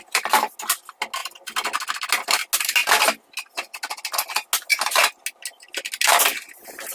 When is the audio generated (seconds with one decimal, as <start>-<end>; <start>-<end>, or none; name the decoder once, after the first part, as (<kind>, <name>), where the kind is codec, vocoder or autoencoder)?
none